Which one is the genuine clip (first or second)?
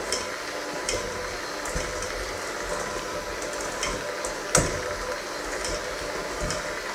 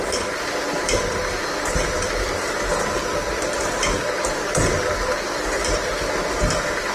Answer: first